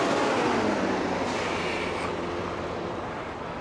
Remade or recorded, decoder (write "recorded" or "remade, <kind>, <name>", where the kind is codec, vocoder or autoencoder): recorded